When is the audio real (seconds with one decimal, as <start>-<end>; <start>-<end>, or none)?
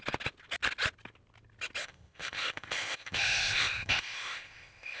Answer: 0.0-1.8